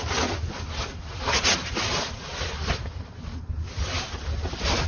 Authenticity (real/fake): real